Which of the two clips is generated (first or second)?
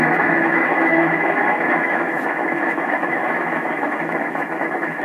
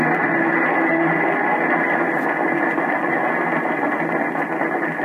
first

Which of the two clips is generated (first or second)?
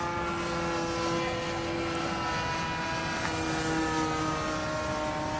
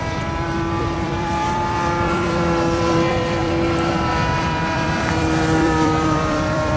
second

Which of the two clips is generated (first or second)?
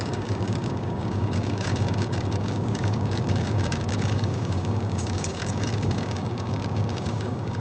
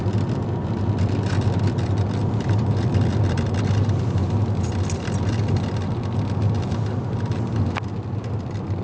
first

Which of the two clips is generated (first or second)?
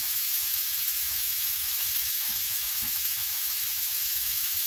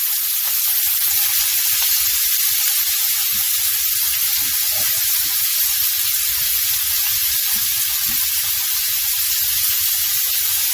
first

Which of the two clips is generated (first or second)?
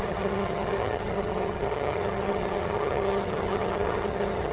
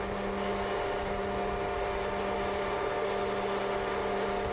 first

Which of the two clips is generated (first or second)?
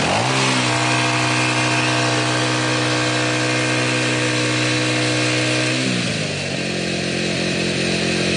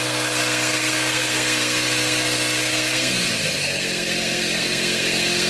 second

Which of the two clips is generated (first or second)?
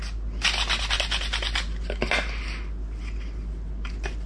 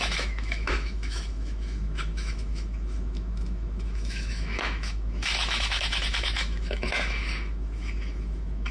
second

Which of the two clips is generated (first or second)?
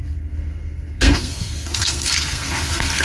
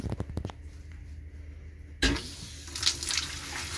first